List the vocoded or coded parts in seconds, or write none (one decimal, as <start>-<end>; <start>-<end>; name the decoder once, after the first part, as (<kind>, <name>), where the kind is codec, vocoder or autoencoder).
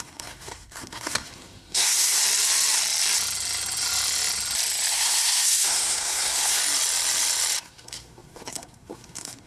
0.0-2.2 (codec, SNAC); 4.9-6.6; 7.6-9.5